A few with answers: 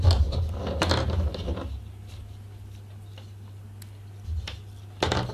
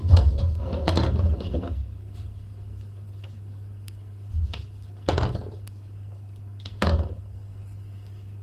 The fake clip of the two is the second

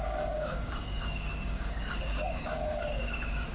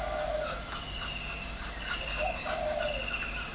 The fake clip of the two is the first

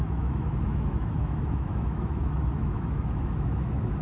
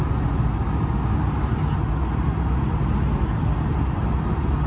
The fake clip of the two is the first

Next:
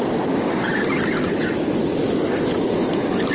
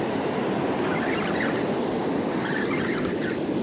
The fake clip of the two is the second